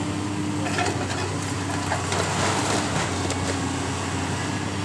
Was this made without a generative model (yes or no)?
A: yes